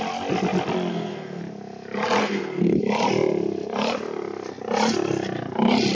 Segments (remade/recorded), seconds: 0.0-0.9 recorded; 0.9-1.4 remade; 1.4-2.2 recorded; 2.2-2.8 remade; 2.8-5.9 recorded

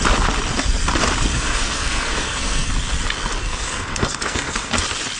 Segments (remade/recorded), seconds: 0.0-1.3 recorded; 1.3-2.7 remade; 2.7-3.4 recorded; 3.4-4.7 remade; 4.7-5.2 recorded

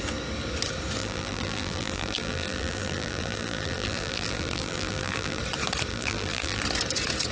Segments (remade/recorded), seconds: 0.0-1.0 recorded; 1.0-5.4 remade; 5.4-5.9 recorded; 5.9-6.6 remade; 6.6-7.3 recorded

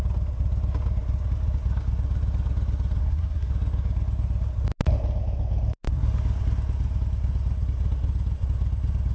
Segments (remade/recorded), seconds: 0.0-3.0 recorded; 3.0-3.5 remade; 3.5-9.1 recorded

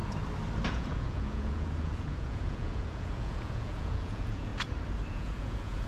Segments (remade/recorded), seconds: 0.0-0.7 recorded; 0.7-4.5 remade; 4.5-5.1 recorded; 5.1-5.9 remade

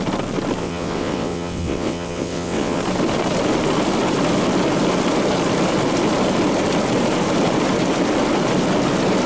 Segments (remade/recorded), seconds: 0.0-0.6 recorded; 0.6-2.8 remade; 2.8-9.3 recorded